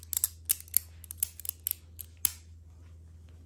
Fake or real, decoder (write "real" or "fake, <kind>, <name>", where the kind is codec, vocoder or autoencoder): real